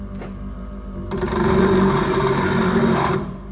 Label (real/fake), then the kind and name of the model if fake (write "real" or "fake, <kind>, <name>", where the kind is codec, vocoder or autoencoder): fake, vocoder, BigVGAN v2